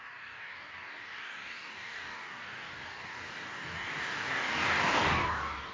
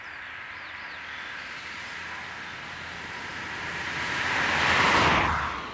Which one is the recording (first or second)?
second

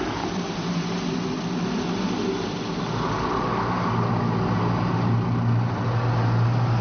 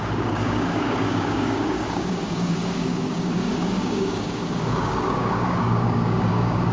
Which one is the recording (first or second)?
first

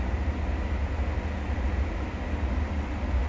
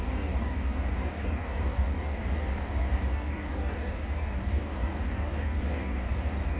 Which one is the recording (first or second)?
first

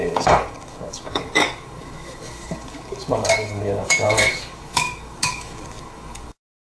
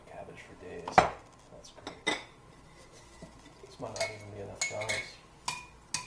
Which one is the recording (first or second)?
second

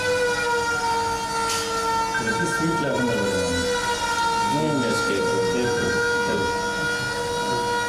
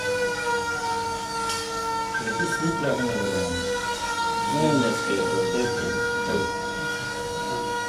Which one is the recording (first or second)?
first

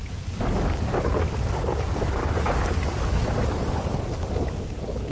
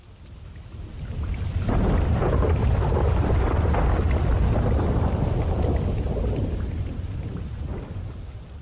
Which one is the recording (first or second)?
second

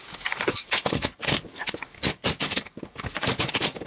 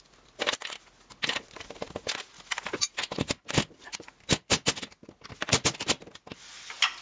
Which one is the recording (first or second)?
second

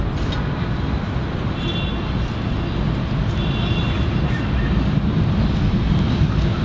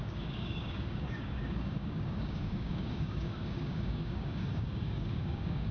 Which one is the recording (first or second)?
first